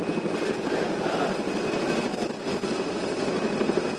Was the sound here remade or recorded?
recorded